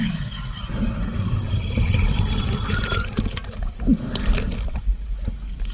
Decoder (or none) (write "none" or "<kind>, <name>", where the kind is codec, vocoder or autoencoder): none